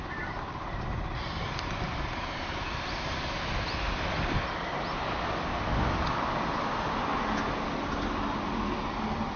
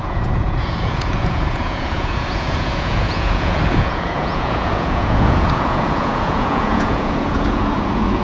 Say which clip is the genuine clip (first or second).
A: first